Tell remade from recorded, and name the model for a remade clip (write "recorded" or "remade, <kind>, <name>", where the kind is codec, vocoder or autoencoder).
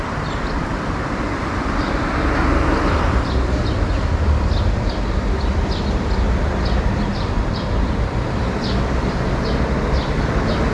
remade, vocoder, BigVGAN v2